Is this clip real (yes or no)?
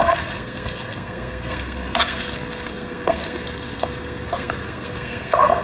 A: no